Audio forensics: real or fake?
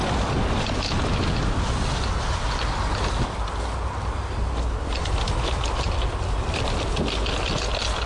real